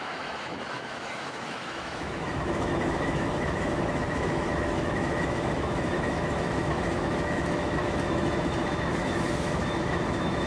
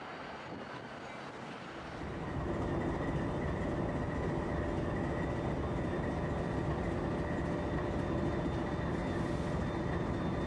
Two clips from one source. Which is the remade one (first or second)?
first